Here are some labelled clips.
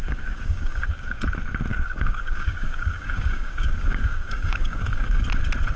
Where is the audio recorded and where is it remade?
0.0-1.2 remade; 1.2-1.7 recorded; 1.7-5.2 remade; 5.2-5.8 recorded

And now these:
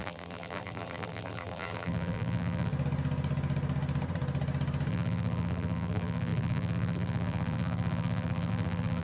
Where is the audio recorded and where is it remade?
0.0-2.7 remade; 2.7-4.9 recorded; 4.9-9.0 remade

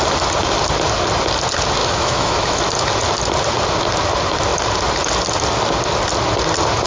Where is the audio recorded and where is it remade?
0.0-1.8 recorded; 1.8-2.6 remade; 2.6-6.9 recorded

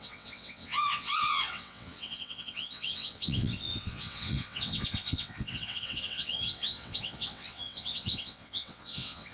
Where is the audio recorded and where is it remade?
0.0-9.3 remade